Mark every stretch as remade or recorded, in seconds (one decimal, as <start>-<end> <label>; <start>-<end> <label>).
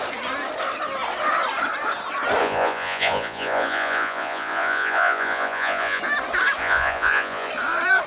0.0-2.4 recorded; 2.4-6.0 remade; 6.0-6.6 recorded; 6.6-7.5 remade; 7.5-8.1 recorded